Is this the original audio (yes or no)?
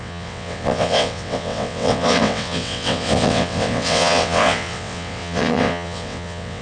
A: no